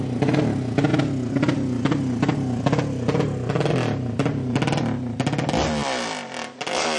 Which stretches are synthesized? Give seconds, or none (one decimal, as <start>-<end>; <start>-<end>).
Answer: none